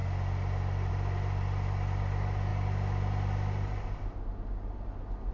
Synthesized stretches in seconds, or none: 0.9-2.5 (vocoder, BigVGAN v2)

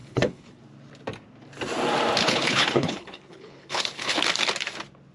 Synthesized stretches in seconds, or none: 0.0-0.6 (codec, HILCodec); 2.2-4.2

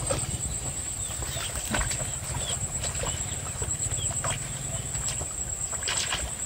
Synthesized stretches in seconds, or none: none

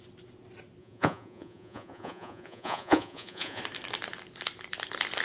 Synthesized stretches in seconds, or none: 0.8-3.6 (vocoder, Vocos)

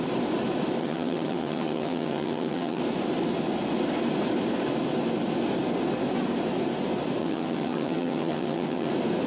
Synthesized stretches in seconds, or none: 0.8-2.8 (vocoder, HiFi-GAN); 7.2-8.9

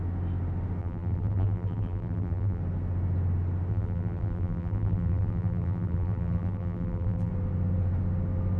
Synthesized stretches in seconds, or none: 0.8-2.6 (vocoder, BigVGAN v2); 3.7-7.3

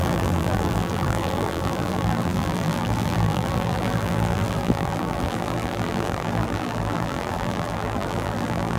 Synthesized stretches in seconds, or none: 0.0-8.8 (vocoder, BigVGAN v2)

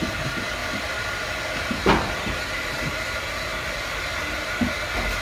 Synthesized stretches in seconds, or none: 0.6-2.9 (vocoder, BigVGAN v2); 3.5-4.0